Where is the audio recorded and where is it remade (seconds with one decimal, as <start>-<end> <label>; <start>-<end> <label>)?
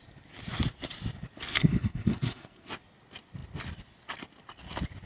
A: 0.0-1.5 recorded; 1.5-2.7 remade; 2.7-5.1 recorded